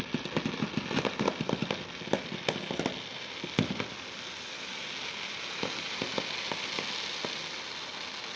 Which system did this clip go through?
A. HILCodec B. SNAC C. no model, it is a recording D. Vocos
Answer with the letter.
C